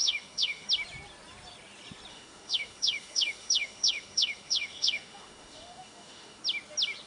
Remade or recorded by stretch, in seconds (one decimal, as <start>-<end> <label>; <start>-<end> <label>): 0.0-0.7 remade; 0.7-2.1 recorded; 2.1-6.4 remade; 6.4-7.1 recorded

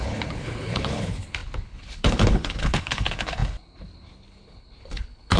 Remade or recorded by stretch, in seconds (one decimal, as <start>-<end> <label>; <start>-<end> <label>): 0.0-5.4 remade